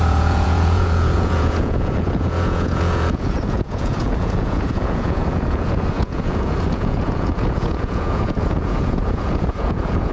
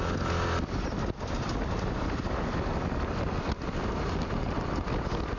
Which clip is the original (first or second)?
second